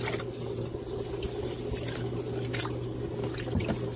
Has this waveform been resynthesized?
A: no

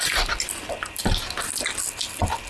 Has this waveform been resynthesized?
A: no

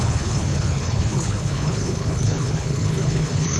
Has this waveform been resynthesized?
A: yes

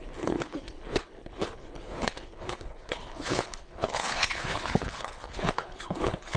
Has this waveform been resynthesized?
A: yes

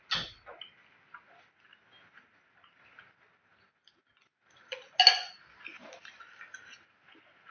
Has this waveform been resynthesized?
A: no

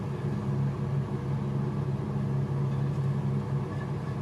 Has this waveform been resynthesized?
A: no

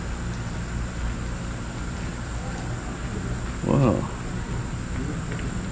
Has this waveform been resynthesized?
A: no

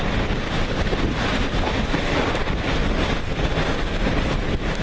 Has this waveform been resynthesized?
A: no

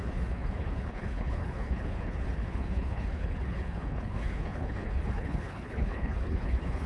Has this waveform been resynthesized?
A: yes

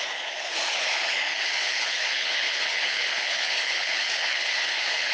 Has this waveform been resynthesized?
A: yes